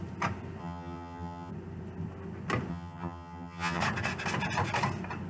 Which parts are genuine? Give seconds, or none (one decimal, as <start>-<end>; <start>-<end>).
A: 0.0-0.6; 1.5-2.7; 3.8-5.3